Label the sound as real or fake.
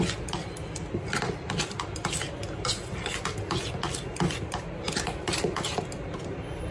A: real